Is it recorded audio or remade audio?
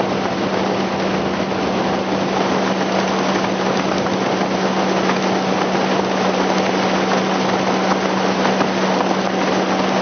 recorded